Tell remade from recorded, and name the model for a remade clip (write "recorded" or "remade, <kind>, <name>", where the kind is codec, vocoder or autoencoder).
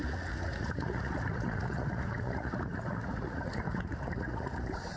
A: remade, vocoder, Vocos